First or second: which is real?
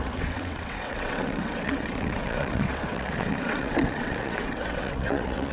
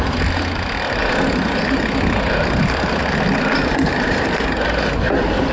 second